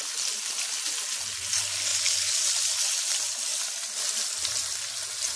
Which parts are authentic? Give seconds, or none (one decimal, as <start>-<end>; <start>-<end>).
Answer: 0.0-5.4